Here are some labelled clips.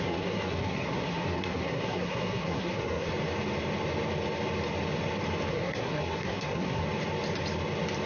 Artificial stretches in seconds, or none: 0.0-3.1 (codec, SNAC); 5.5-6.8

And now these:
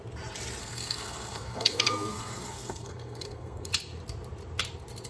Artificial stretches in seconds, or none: 0.6-3.7 (codec, SNAC)

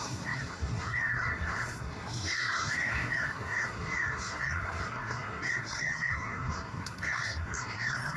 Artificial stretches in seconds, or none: 0.0-8.2 (codec, SNAC)

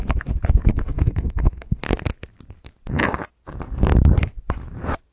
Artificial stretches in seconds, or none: 0.7-1.8 (codec, SNAC)

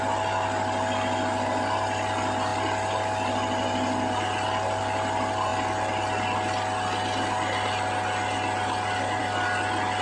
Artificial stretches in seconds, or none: none

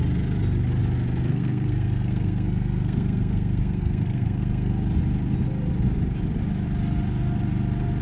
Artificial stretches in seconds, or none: 1.3-4.7 (codec, SNAC)